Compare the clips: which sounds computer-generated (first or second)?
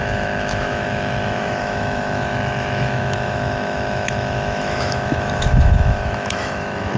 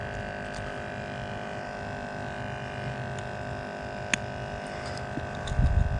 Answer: first